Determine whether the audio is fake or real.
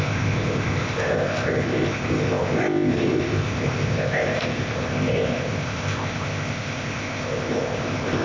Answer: fake